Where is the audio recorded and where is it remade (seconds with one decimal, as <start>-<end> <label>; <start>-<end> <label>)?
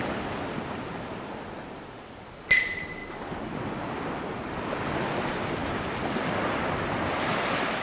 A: 0.0-7.8 recorded